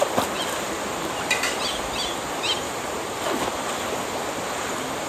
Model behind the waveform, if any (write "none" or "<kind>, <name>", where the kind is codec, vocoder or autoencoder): none